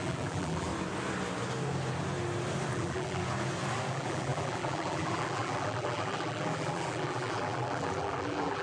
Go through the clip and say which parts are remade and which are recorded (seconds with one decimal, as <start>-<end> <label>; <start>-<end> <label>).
0.0-0.7 remade; 0.7-2.7 recorded; 2.7-3.2 remade; 3.2-3.9 recorded; 3.9-8.6 remade